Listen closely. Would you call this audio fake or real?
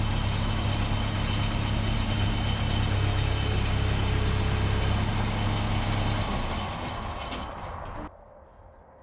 real